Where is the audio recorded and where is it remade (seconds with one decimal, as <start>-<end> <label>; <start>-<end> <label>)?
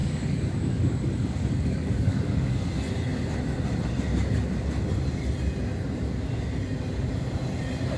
0.0-2.7 remade; 2.7-8.0 recorded